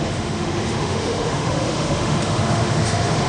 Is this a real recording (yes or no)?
no